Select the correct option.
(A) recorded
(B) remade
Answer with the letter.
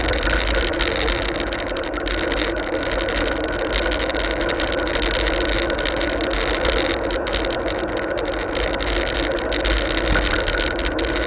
A